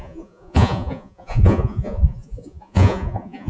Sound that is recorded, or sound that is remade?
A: remade